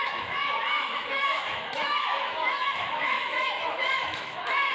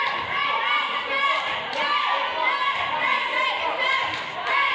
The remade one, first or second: first